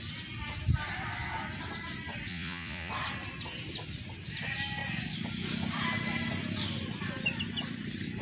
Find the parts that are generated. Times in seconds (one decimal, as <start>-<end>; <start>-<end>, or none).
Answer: 2.3-2.9